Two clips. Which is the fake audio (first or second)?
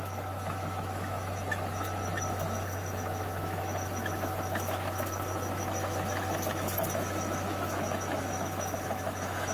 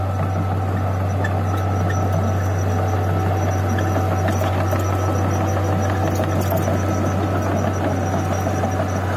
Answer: first